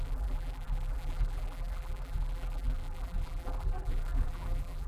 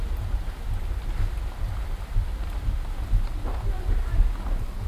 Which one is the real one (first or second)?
second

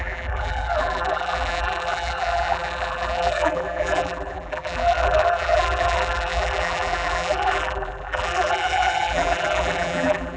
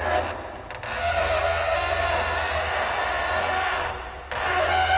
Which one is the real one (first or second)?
second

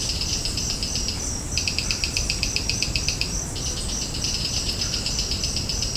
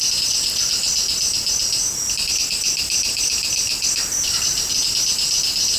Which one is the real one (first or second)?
second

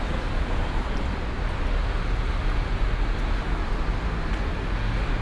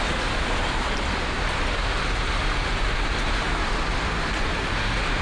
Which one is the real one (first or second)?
first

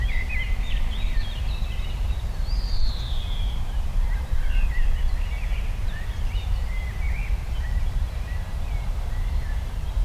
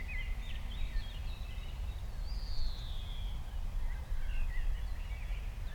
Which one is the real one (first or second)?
second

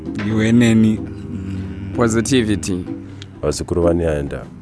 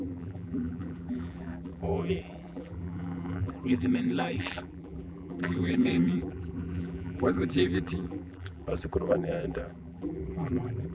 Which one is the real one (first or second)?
first